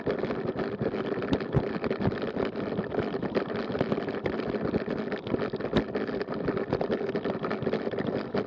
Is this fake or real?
real